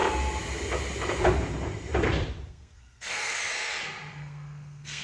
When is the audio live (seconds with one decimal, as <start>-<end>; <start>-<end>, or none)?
0.0-2.5; 3.4-4.1